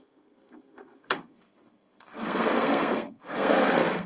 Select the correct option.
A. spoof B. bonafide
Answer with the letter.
A